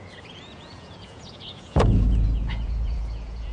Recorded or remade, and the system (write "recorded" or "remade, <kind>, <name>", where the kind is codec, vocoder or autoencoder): remade, vocoder, Vocos